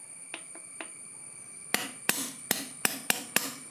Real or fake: fake